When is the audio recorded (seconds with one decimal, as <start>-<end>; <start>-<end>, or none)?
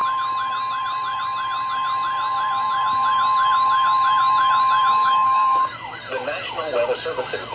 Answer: 0.0-4.9; 6.0-7.5